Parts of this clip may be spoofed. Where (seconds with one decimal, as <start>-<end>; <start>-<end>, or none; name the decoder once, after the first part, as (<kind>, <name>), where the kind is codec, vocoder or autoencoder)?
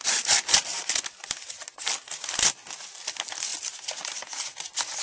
none